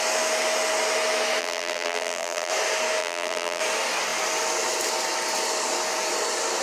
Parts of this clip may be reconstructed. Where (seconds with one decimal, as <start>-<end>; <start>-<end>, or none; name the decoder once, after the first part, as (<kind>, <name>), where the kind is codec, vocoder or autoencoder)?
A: 1.4-2.5 (vocoder, BigVGAN v2); 3.0-3.6